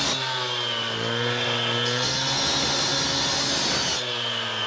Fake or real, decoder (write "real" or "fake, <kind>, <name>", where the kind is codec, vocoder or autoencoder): real